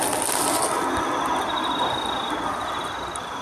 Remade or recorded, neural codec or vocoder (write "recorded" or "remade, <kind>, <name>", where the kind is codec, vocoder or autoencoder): recorded